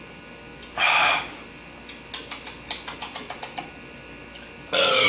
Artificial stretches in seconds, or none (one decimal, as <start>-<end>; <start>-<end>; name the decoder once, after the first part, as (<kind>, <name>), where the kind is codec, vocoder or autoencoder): none